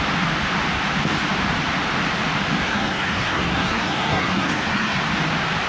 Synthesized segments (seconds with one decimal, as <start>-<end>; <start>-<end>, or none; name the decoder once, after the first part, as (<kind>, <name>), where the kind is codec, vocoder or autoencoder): 2.6-5.0 (codec, SNAC)